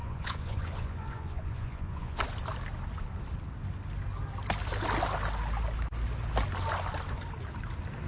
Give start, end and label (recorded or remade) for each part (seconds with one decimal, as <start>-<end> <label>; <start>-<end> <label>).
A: 0.0-2.2 remade; 2.2-8.1 recorded